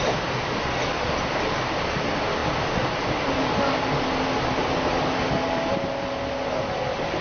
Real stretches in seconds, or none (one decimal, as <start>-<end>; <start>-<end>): 0.0-7.2